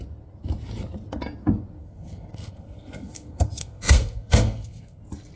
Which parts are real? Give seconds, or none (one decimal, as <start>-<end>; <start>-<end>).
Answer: 0.0-1.8; 5.0-5.4